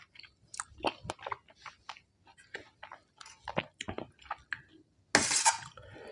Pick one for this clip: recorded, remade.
recorded